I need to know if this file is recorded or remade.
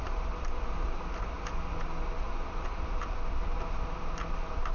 recorded